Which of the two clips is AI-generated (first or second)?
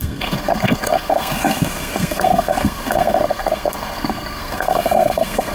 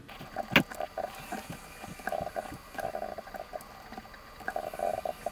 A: first